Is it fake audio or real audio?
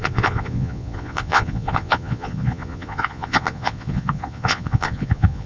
fake